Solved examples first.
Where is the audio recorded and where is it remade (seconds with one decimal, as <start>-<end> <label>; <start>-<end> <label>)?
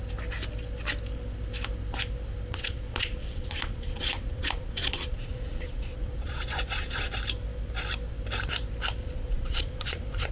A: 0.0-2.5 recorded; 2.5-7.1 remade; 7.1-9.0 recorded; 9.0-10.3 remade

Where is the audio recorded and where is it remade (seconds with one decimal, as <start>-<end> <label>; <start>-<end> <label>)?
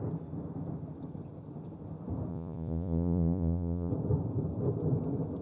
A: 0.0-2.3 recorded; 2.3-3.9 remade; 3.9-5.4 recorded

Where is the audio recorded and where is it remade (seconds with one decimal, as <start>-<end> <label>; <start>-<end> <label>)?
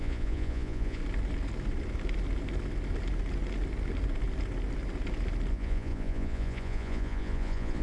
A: 0.0-1.0 remade; 1.0-5.5 recorded; 5.5-7.8 remade